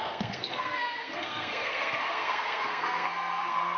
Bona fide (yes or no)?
no